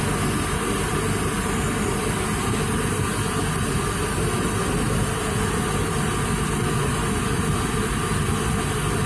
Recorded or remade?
recorded